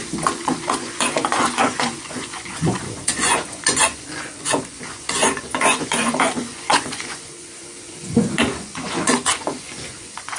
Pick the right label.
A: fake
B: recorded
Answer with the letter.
A